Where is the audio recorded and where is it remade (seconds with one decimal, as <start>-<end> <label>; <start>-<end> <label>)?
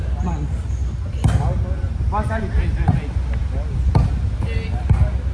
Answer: 0.0-5.3 recorded